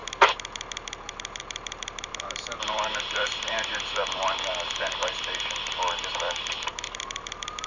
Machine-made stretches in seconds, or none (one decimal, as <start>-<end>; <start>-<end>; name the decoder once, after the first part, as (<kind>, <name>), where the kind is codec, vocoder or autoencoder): 1.4-7.7 (vocoder, BigVGAN v2)